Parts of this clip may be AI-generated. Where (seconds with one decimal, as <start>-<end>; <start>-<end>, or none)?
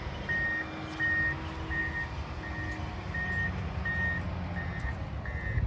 none